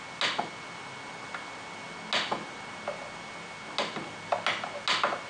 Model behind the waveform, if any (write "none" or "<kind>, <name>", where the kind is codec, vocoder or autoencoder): none